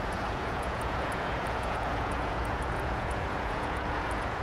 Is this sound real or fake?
fake